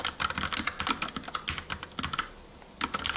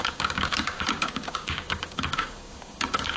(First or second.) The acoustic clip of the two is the first